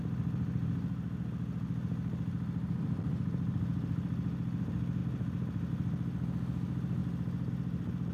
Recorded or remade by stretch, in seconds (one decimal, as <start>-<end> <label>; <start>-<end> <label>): 0.0-8.1 recorded